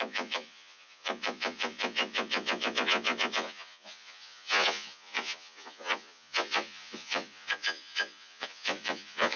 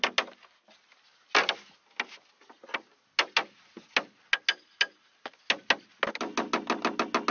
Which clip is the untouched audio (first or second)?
second